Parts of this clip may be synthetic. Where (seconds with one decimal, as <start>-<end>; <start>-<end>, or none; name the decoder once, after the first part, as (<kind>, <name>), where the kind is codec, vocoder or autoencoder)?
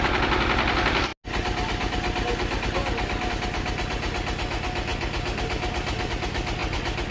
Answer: none